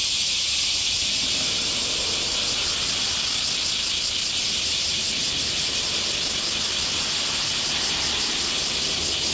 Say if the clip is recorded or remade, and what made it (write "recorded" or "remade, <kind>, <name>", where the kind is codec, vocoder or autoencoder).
recorded